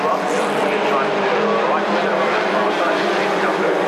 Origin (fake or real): fake